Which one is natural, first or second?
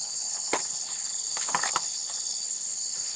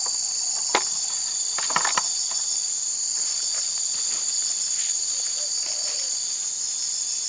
second